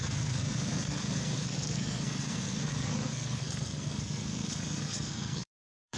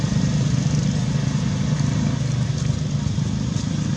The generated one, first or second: first